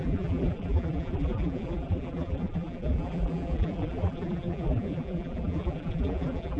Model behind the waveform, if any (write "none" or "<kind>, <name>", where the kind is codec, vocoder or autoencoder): vocoder, BigVGAN v2